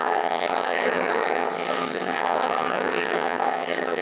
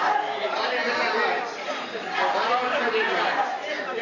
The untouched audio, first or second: second